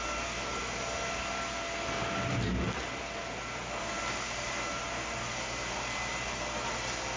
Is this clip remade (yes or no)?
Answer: no